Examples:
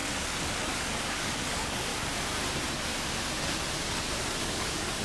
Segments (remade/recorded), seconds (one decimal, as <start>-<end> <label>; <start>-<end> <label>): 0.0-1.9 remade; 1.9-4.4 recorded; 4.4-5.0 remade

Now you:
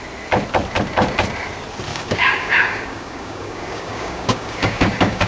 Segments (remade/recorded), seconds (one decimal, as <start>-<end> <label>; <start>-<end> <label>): 0.0-1.9 recorded; 1.9-5.3 remade

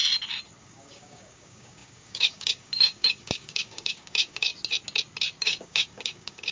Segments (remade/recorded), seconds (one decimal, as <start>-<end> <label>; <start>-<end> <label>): 0.0-0.6 recorded; 0.6-4.5 remade; 4.5-5.4 recorded; 5.4-6.5 remade